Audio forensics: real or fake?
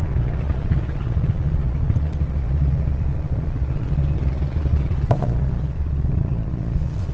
fake